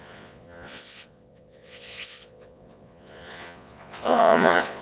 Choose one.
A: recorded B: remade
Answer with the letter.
B